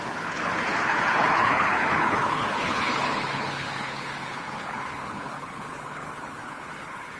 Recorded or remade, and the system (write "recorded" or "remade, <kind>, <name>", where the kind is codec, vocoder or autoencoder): remade, codec, HILCodec